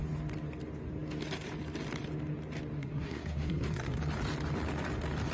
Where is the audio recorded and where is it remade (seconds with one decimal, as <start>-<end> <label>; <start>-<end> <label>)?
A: 0.0-2.8 recorded; 2.8-4.0 remade; 4.0-5.3 recorded